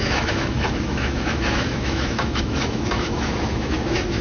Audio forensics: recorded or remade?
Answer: remade